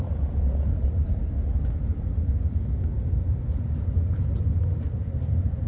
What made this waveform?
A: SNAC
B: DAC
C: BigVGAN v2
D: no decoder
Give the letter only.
D